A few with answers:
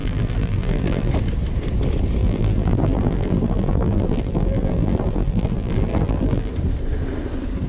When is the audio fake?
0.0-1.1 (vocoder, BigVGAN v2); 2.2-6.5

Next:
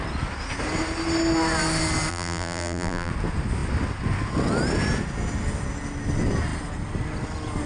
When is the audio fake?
2.1-3.1 (vocoder, BigVGAN v2)